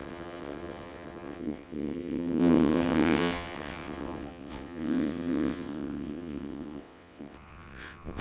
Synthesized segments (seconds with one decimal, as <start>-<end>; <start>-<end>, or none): 0.0-8.2